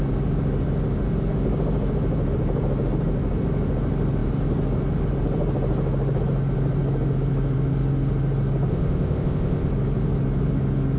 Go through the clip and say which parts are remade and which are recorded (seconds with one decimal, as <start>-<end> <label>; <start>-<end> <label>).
0.0-8.7 recorded; 8.7-9.7 remade; 9.7-11.0 recorded